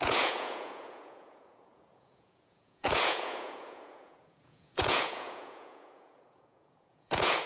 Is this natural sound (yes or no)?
no